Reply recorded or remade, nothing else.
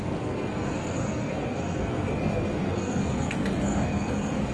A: remade